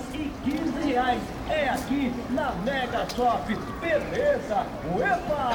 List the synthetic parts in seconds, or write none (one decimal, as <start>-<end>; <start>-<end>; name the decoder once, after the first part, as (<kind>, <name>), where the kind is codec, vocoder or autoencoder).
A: 3.0-4.5 (vocoder, BigVGAN v2)